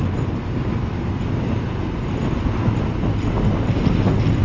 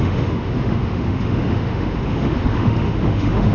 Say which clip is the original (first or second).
first